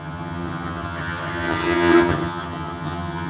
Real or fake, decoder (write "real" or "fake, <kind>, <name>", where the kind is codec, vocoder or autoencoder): fake, vocoder, HiFi-GAN